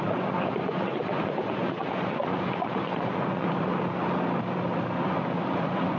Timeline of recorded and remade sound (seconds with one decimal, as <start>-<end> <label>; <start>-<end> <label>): 0.0-3.7 remade; 3.7-5.0 recorded; 5.0-6.0 remade